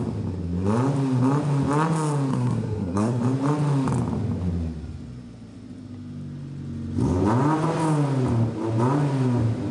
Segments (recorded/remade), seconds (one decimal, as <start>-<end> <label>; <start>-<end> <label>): 0.0-2.3 recorded; 2.3-3.2 remade; 3.2-9.7 recorded